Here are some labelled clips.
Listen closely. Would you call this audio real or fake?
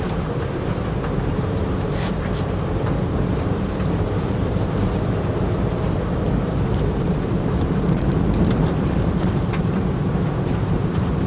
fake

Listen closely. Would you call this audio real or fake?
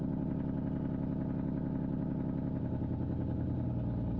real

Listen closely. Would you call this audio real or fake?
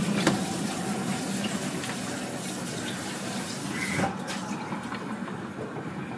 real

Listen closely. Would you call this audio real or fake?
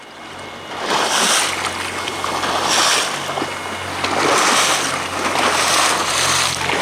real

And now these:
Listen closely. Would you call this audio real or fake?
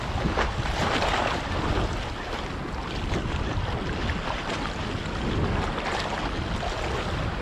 real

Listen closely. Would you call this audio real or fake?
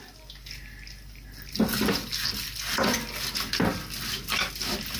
real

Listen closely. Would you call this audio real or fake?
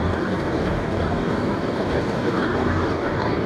fake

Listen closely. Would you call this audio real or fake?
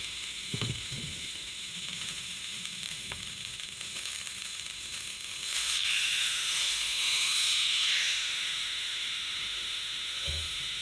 fake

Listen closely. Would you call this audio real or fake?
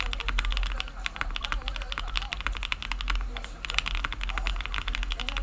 real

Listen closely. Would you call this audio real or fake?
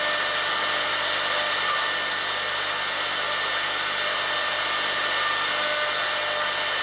real